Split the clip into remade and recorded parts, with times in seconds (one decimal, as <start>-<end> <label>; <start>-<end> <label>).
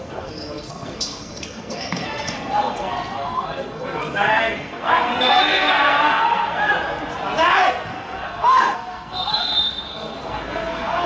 0.0-6.7 remade; 6.7-7.7 recorded; 7.7-11.1 remade